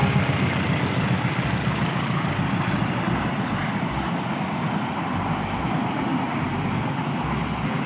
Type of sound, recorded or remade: recorded